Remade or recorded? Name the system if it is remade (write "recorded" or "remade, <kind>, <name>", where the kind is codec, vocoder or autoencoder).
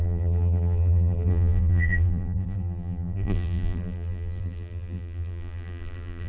remade, vocoder, BigVGAN v2